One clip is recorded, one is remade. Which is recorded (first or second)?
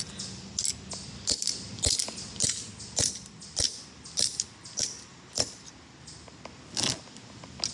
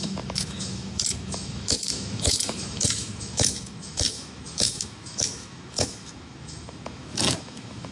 first